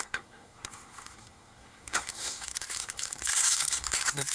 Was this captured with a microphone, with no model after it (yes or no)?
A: no